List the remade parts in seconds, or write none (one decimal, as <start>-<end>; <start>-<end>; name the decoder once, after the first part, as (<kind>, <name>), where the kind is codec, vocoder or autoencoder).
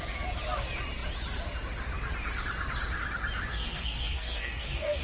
3.5-5.0 (codec, SNAC)